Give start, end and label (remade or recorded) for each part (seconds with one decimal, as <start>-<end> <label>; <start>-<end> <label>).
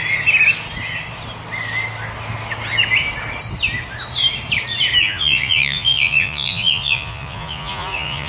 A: 0.0-5.0 recorded; 5.0-8.3 remade